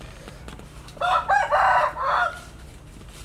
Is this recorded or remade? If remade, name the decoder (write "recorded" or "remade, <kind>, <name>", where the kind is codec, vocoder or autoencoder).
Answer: recorded